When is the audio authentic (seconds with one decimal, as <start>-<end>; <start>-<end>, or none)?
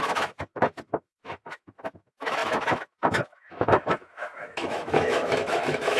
none